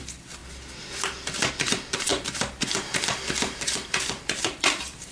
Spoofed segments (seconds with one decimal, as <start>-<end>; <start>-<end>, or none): 0.0-0.4; 1.5-5.1